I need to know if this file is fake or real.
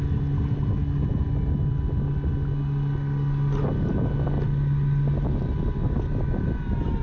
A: real